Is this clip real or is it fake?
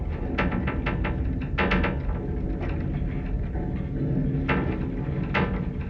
real